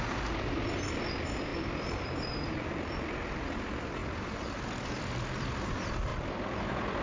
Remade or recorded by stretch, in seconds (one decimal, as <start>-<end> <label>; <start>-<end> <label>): 0.0-7.0 remade

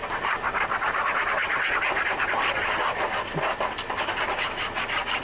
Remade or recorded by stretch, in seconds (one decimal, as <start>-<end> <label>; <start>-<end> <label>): 0.0-5.2 recorded

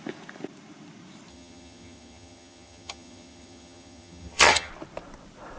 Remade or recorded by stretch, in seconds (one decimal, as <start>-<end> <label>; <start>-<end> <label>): 0.0-1.3 recorded; 1.3-4.7 remade; 4.7-5.6 recorded

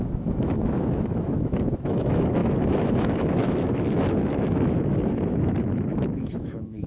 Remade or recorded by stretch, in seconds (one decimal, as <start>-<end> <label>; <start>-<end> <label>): 0.0-6.9 remade